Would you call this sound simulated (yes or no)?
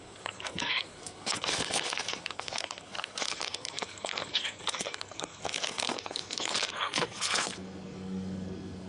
yes